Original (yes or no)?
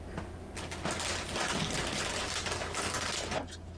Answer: yes